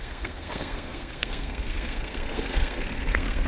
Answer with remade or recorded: remade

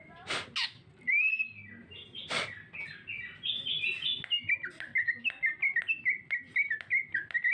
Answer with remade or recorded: recorded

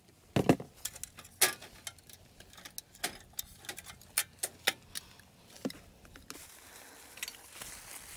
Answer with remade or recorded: recorded